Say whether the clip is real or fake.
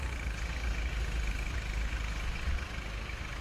real